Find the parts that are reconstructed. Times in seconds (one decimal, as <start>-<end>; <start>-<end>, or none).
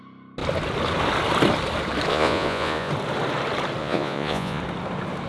2.1-2.9; 3.8-4.6